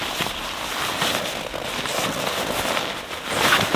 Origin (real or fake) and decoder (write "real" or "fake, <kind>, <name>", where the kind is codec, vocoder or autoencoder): real